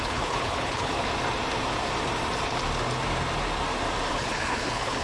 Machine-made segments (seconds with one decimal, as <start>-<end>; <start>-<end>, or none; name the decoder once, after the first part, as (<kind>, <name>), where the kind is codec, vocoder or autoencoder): 0.0-1.1 (codec, HILCodec); 4.1-5.0

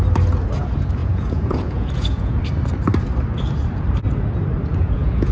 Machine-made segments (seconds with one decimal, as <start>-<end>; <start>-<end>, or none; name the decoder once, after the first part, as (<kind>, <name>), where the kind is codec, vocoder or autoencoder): 1.0-2.4 (vocoder, Vocos); 4.7-5.3

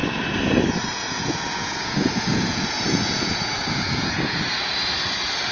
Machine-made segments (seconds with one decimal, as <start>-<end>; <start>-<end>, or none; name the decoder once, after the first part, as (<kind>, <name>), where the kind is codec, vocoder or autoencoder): 1.0-4.3 (vocoder, Vocos)

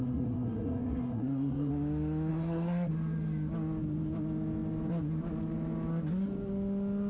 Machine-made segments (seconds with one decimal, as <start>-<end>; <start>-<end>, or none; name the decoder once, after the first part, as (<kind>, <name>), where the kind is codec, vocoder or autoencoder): 0.0-1.7 (codec, SNAC); 2.3-2.9

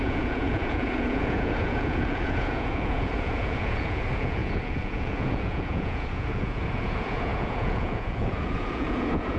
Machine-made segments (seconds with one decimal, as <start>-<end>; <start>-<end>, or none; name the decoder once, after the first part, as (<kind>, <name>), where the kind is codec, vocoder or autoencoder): 0.0-9.4 (vocoder, Vocos)

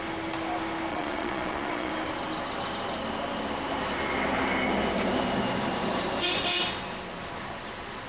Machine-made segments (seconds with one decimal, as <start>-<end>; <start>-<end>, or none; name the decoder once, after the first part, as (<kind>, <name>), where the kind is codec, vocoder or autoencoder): 0.9-1.9 (vocoder, Vocos)